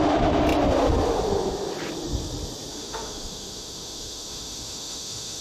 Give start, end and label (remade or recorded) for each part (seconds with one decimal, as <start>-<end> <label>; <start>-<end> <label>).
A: 0.0-2.7 recorded; 2.7-5.4 remade